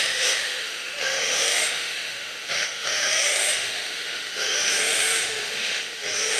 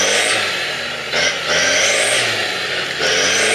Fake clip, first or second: first